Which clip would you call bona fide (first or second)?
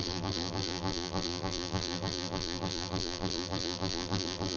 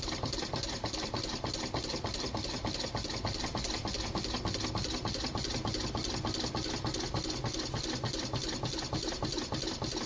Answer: second